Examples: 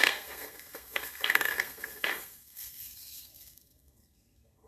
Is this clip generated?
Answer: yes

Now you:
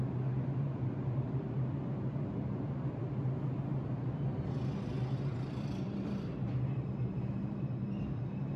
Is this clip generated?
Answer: yes